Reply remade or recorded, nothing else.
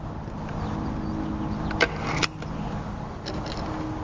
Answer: recorded